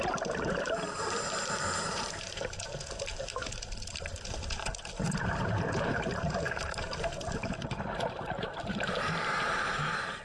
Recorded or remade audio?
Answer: remade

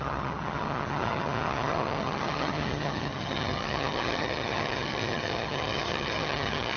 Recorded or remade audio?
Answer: remade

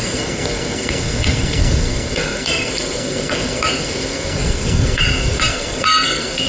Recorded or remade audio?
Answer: remade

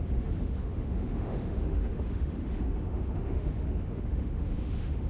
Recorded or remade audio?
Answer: remade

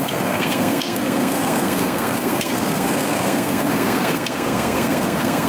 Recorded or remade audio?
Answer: remade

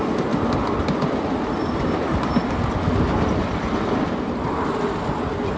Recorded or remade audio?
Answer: recorded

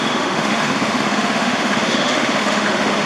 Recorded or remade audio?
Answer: remade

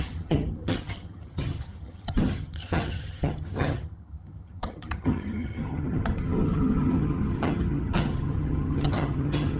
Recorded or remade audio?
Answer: remade